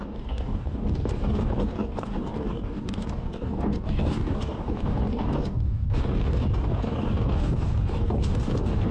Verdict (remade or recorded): remade